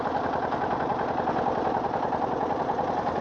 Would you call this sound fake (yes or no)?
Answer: no